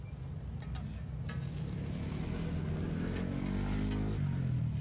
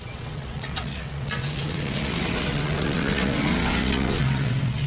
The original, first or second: first